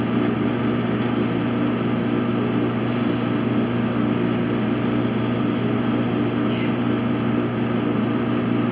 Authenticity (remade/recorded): recorded